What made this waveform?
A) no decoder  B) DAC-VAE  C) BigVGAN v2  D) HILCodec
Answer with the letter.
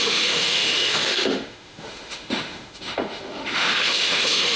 B